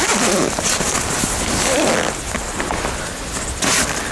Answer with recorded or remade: recorded